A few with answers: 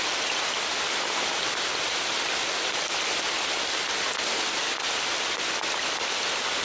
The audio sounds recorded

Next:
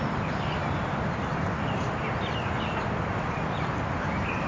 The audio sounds recorded